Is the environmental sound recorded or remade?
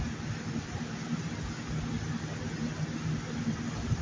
recorded